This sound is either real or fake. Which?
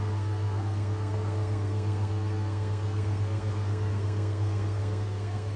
fake